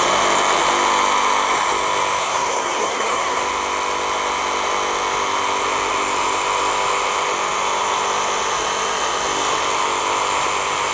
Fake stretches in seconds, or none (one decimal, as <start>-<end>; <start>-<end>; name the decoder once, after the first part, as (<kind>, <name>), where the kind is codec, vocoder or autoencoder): 2.2-3.4 (codec, SNAC)